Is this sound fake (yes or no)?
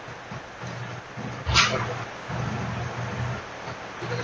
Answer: no